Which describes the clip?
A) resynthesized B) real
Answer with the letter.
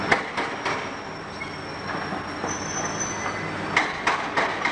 B